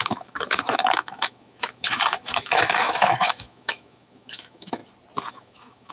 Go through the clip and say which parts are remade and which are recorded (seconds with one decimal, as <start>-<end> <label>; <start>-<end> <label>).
0.0-4.8 remade; 4.8-5.3 recorded; 5.3-5.9 remade